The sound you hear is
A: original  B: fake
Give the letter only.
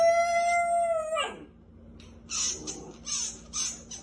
A